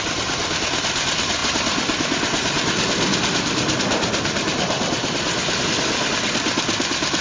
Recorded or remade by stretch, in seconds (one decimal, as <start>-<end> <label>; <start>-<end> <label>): 0.0-7.2 recorded